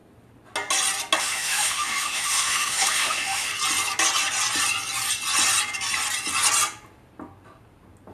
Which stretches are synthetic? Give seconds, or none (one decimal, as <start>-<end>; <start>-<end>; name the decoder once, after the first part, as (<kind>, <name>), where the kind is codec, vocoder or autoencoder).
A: 1.2-3.5 (autoencoder, DAC-VAE)